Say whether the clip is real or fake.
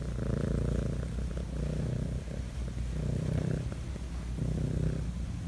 real